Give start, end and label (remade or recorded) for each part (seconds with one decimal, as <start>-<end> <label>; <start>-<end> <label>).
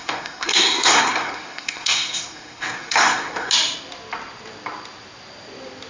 0.0-3.5 remade; 3.5-5.9 recorded